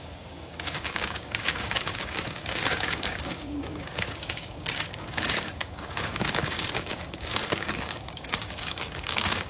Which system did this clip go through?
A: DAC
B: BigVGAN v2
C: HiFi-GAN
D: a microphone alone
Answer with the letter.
A